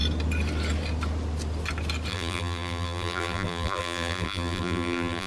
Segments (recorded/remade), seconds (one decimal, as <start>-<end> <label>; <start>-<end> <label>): 0.0-2.1 recorded; 2.1-5.3 remade